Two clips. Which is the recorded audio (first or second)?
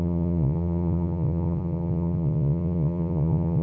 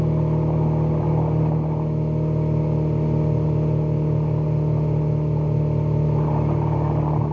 second